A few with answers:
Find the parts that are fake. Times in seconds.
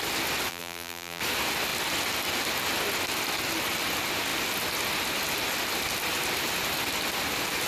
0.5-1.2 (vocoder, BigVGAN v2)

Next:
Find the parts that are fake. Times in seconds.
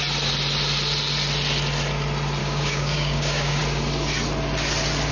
2.4-3.6 (codec, DAC)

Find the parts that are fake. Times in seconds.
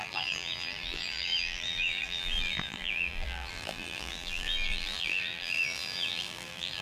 0.0-6.8 (vocoder, BigVGAN v2)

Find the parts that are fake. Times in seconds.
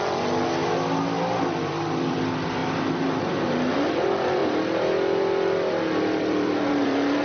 0.0-0.6 (vocoder, BigVGAN v2); 1.4-2.6; 3.9-4.4; 6.2-7.2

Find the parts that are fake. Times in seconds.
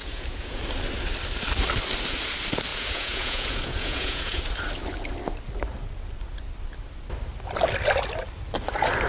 0.0-0.6 (vocoder, Vocos); 2.7-4.4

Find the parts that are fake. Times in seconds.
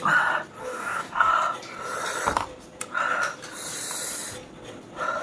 0.6-1.3 (codec, DAC)